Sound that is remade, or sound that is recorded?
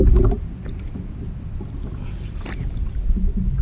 recorded